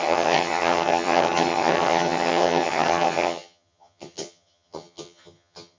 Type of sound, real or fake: fake